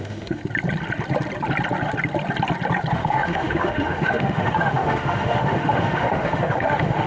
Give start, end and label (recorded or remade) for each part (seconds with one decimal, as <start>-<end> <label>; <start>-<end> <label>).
0.0-0.4 remade; 0.4-2.9 recorded; 2.9-7.1 remade